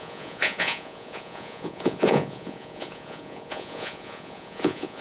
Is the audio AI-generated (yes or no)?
yes